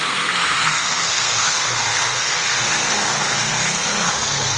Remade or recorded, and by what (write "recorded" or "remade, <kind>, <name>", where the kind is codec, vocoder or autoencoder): remade, codec, SNAC